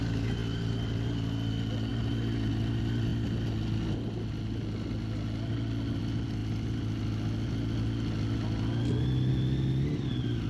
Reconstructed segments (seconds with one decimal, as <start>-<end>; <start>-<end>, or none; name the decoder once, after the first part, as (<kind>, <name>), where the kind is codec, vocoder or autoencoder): 1.9-2.5 (vocoder, BigVGAN v2)